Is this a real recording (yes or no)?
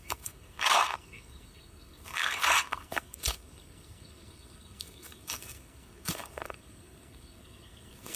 no